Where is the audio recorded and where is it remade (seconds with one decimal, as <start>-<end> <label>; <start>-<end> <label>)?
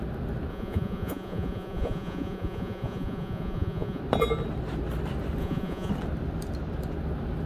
0.0-0.5 recorded; 0.5-4.0 remade; 4.0-5.4 recorded; 5.4-5.9 remade; 5.9-7.5 recorded